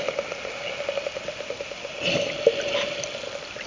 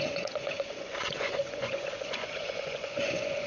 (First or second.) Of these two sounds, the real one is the first